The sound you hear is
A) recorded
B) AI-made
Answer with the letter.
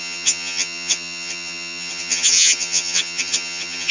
B